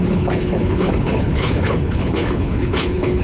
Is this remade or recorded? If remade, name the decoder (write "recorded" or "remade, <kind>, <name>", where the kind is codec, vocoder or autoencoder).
remade, codec, HILCodec